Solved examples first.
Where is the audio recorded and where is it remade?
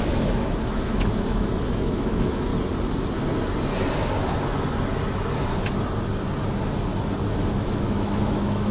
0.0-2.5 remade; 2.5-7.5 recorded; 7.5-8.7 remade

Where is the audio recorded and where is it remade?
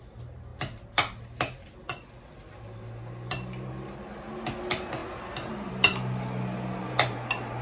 0.0-7.6 recorded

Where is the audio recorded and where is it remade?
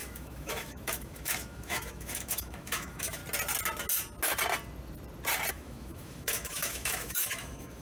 0.0-3.2 remade; 3.2-5.5 recorded; 5.5-7.8 remade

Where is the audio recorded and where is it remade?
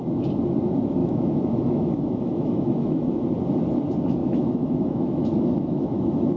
0.0-1.0 recorded; 1.0-3.2 remade; 3.2-4.2 recorded; 4.2-6.4 remade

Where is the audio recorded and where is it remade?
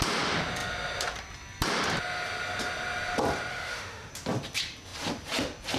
0.0-3.5 recorded; 3.5-4.1 remade; 4.1-5.8 recorded